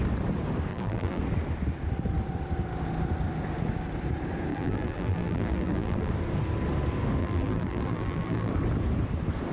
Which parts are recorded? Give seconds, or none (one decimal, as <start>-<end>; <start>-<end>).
0.0-0.7; 1.2-4.5; 6.1-7.2; 8.5-9.5